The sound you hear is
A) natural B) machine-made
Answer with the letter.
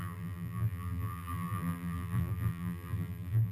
B